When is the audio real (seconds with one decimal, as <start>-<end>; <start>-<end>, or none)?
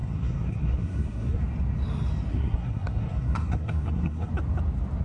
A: 1.4-2.3; 4.3-5.0